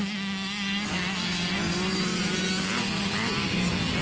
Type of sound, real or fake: real